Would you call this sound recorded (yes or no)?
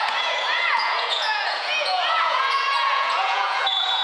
no